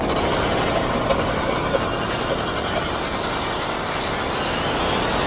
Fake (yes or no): no